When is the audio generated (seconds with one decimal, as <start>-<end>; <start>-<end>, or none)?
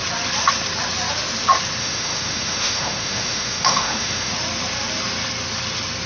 1.8-4.3